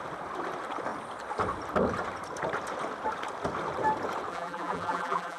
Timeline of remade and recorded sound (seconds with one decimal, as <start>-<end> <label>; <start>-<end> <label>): 0.0-4.3 recorded; 4.3-5.4 remade